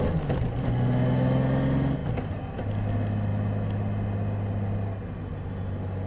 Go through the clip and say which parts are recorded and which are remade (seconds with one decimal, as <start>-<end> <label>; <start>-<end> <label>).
0.0-2.0 recorded; 2.0-2.6 remade; 2.6-6.1 recorded